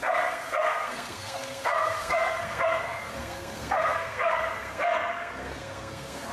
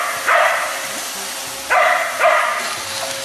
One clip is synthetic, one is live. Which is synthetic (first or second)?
first